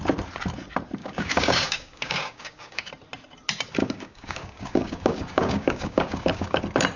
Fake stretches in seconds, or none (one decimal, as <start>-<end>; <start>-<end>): 1.0-2.9; 3.8-6.6